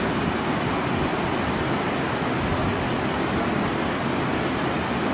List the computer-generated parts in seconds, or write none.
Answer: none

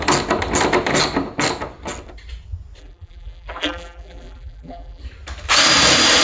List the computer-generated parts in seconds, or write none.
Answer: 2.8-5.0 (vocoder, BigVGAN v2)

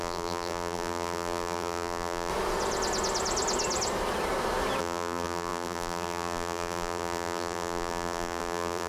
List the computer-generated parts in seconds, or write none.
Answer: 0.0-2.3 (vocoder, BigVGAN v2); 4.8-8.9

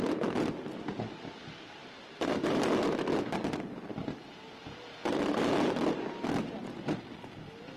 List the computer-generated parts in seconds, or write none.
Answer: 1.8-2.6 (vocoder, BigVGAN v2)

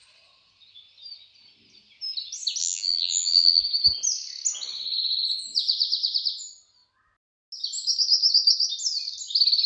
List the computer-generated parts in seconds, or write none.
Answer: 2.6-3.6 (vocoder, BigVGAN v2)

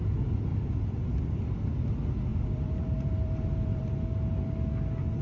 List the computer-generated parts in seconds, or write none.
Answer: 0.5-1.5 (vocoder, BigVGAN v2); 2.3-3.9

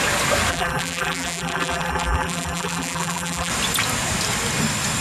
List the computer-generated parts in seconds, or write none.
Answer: 0.5-3.5 (vocoder, BigVGAN v2)